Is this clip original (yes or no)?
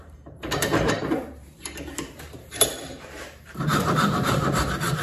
no